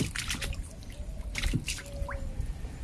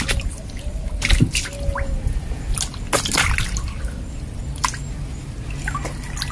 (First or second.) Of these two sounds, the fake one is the first